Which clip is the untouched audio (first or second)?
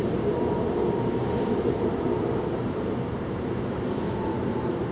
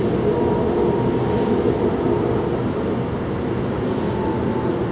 second